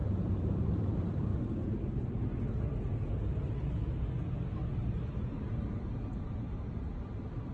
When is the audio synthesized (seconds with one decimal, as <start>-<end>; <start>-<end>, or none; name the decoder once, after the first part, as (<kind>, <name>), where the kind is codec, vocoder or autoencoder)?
0.6-1.3 (vocoder, BigVGAN v2); 5.1-7.5